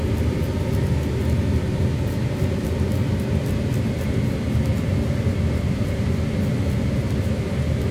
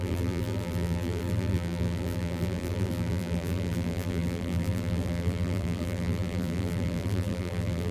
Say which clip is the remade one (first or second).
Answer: second